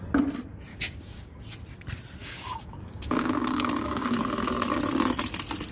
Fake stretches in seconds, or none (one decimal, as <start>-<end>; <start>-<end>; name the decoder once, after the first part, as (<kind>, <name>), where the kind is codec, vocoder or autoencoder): 0.7-1.5 (codec, DAC); 2.2-4.2